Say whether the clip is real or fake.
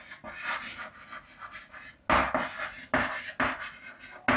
real